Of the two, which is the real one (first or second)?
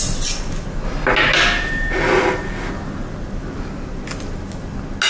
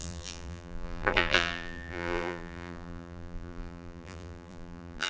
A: first